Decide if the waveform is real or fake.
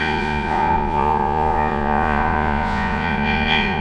fake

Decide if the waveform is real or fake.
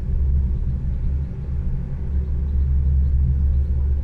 real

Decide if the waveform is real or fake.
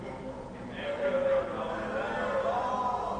real